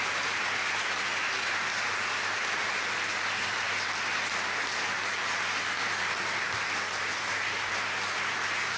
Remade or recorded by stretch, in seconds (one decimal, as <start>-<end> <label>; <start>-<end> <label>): 0.0-8.8 recorded